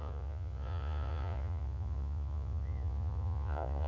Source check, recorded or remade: remade